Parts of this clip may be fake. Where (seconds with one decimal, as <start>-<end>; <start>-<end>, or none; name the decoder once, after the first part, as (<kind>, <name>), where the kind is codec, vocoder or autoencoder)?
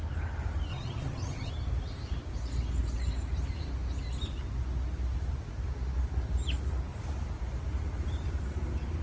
0.7-1.5 (vocoder, HiFi-GAN)